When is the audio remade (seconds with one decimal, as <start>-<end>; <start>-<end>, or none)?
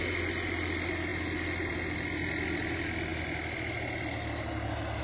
none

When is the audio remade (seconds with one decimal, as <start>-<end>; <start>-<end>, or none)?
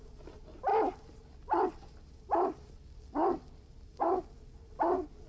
none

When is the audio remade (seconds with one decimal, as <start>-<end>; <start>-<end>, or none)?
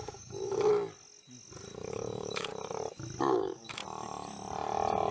0.0-0.7; 1.9-2.5; 3.2-3.8